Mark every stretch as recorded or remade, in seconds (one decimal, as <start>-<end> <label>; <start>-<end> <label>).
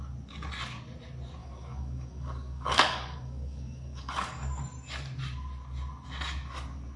0.0-1.4 recorded; 1.4-4.6 remade; 4.6-7.0 recorded